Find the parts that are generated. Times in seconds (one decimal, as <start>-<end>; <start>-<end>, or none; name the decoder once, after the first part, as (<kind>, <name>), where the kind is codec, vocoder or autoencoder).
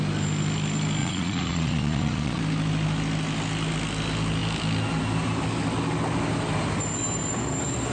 1.0-2.4 (vocoder, Vocos)